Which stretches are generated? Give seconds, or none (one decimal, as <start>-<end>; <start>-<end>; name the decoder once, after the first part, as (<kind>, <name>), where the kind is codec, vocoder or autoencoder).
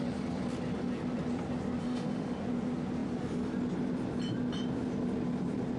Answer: 1.8-2.4 (autoencoder, DAC-VAE)